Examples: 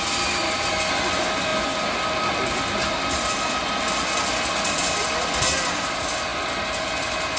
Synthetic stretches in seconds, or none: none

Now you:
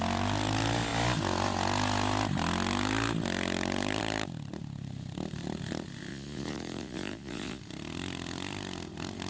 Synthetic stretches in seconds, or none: 6.1-7.6 (vocoder, Vocos)

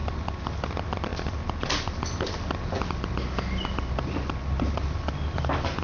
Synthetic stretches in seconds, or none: none

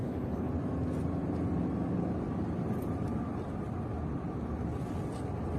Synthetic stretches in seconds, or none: 0.0-0.5 (codec, HILCodec)

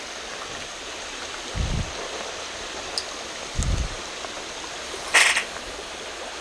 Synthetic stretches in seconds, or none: none

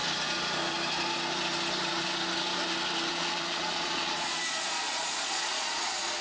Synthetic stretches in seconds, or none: 3.1-6.2 (vocoder, Vocos)

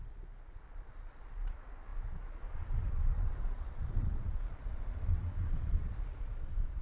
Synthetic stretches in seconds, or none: 0.0-6.8 (vocoder, Vocos)

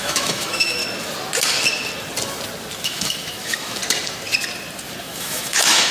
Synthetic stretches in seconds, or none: 0.0-0.8 (autoencoder, DAC-VAE); 2.8-3.8; 5.0-5.9